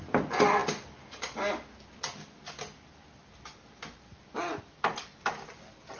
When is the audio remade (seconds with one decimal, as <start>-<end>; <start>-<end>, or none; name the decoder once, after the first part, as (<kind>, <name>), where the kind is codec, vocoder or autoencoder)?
none